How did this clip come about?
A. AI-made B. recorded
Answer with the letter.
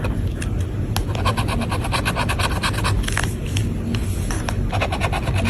B